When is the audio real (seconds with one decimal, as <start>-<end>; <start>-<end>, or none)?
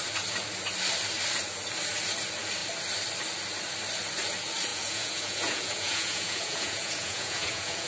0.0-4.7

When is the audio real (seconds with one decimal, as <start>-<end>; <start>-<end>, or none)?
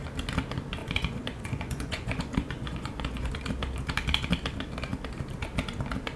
0.0-0.8; 3.3-6.2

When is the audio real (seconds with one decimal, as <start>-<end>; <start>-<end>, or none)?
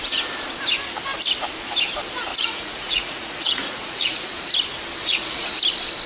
0.0-2.3; 4.3-5.0; 5.6-6.1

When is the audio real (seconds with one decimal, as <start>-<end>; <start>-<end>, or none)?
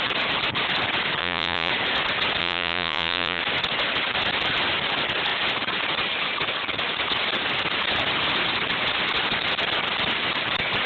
0.0-1.2; 1.7-2.4; 3.4-10.9